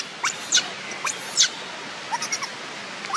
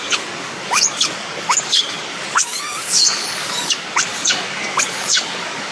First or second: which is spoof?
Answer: second